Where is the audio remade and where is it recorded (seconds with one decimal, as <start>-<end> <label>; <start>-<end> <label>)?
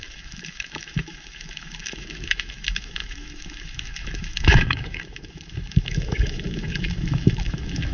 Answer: 0.0-7.9 remade